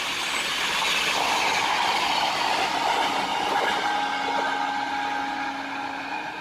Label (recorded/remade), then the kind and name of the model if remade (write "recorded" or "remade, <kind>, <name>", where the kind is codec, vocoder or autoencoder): recorded